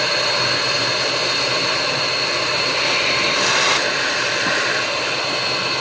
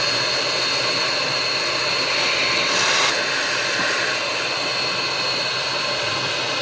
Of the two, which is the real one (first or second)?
second